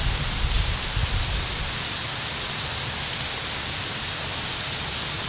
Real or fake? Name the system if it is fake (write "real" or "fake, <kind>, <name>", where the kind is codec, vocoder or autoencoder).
real